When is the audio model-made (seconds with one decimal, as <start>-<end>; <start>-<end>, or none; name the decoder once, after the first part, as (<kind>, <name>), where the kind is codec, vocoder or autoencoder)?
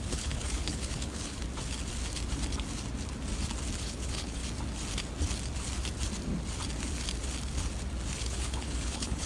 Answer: 0.0-1.4 (codec, HILCodec); 3.9-4.4; 8.2-9.3